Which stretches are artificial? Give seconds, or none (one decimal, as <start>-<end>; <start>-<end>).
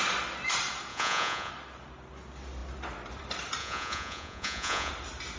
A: 0.9-1.5; 3.6-4.9